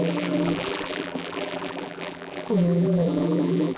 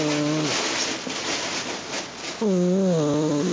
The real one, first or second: second